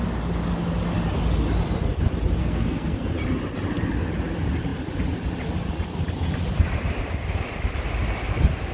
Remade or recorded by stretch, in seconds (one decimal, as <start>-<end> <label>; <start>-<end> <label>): 0.0-2.4 recorded; 2.4-3.1 remade; 3.1-8.7 recorded